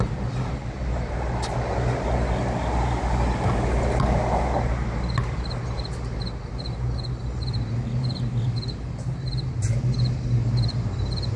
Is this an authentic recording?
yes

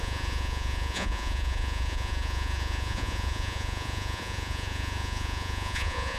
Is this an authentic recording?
no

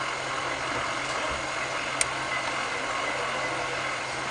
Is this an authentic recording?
yes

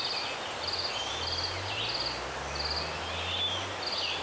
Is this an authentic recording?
yes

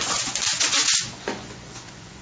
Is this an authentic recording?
no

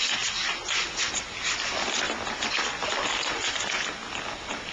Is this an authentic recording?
yes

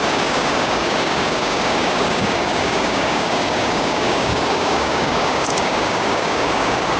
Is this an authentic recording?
no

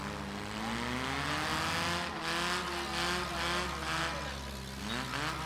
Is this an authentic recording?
yes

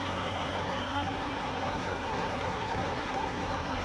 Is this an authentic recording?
no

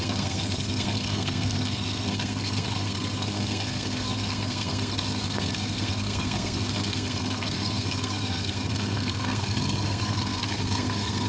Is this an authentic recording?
no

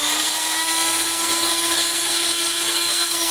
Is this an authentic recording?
no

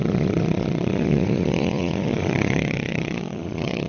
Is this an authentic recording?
no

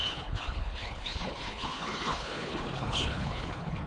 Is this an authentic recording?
no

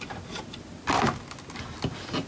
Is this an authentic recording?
yes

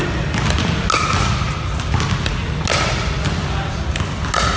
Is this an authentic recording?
yes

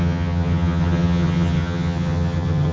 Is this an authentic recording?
no